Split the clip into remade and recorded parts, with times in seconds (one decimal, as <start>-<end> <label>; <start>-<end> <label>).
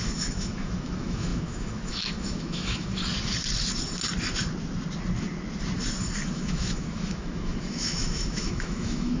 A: 0.0-3.0 remade; 3.0-6.3 recorded; 6.3-9.2 remade